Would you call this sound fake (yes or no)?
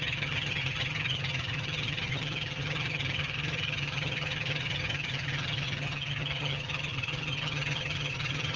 yes